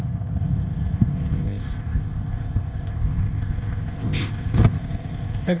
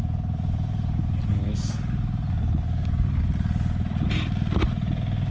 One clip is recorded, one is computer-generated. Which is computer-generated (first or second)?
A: first